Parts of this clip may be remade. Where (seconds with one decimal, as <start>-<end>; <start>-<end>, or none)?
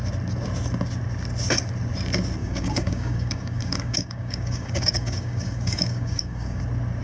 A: 2.4-6.6